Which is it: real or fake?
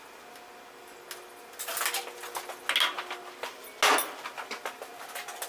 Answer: real